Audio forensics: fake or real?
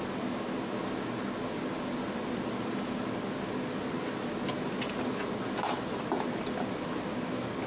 real